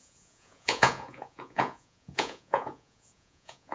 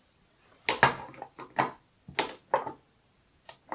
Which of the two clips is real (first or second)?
second